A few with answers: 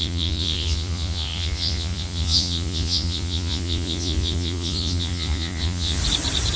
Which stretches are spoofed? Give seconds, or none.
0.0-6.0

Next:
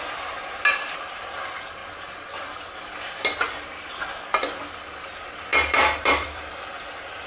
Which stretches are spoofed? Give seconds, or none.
1.8-3.1; 5.5-6.7

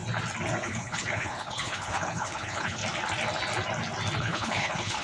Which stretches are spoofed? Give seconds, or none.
0.6-2.8; 4.2-5.0

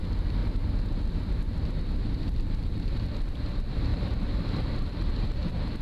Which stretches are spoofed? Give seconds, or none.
0.0-0.4; 1.2-1.6; 2.3-5.8

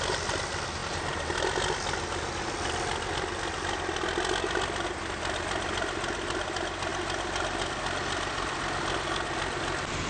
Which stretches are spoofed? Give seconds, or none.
none